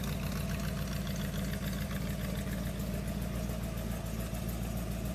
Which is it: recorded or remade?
recorded